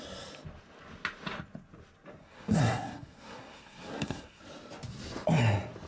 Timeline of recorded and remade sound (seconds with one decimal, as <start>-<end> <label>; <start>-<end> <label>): 0.0-2.2 recorded; 2.2-4.4 remade; 4.4-5.9 recorded